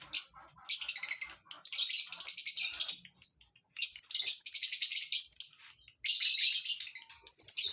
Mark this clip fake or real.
real